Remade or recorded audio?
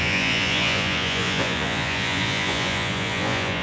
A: remade